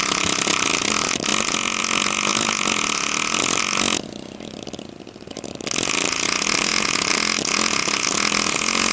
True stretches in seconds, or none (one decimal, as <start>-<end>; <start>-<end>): 0.0-8.9